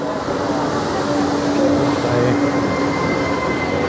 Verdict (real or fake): real